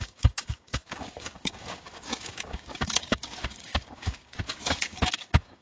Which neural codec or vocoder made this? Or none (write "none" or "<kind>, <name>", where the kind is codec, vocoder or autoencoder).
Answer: codec, DAC